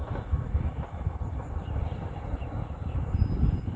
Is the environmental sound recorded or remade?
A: remade